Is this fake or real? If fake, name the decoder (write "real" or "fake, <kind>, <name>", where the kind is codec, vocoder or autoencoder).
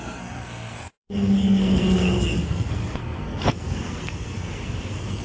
fake, codec, SNAC